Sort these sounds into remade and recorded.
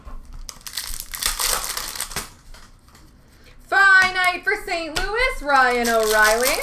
recorded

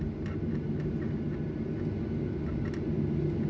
recorded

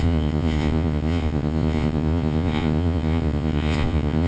remade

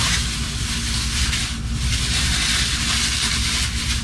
recorded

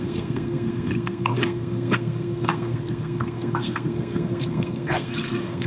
remade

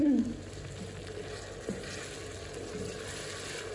recorded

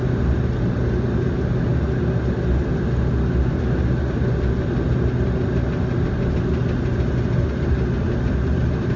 recorded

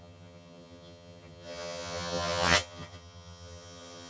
remade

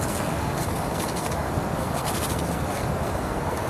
remade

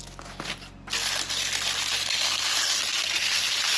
recorded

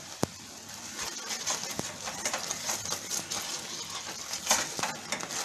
recorded